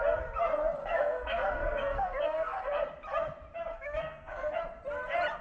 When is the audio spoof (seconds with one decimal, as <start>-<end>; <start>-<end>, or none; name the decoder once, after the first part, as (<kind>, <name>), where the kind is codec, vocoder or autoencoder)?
0.8-2.8 (codec, SNAC); 3.7-4.5